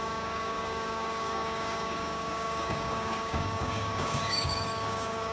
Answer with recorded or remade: remade